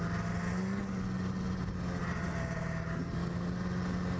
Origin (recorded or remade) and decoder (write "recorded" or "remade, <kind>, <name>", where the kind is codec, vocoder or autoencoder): recorded